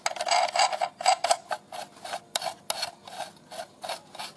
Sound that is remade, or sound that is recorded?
recorded